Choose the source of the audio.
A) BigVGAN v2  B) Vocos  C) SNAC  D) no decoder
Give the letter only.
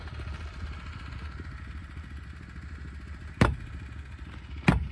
D